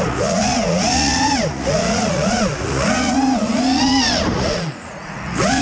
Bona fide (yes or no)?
no